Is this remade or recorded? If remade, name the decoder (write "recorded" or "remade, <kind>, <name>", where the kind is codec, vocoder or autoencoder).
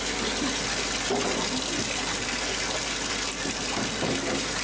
recorded